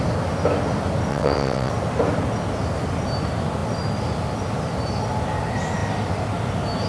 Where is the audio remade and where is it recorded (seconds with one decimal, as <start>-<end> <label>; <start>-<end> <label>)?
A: 0.0-1.1 recorded; 1.1-1.7 remade; 1.7-6.9 recorded